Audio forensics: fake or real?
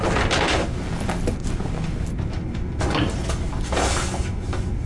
real